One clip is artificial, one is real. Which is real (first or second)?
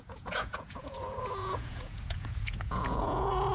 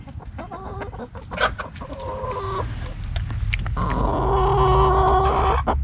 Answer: second